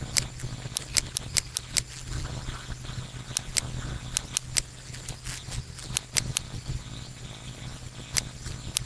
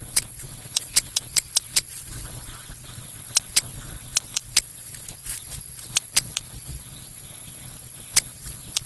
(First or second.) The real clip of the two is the first